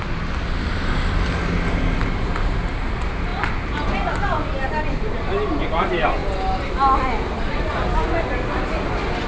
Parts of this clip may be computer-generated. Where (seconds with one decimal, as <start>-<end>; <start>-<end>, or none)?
none